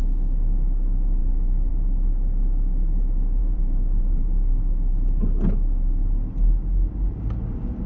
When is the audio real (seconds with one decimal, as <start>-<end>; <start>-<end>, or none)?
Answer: 0.0-1.2; 1.7-3.4; 4.5-7.9